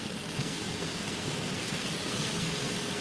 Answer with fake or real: fake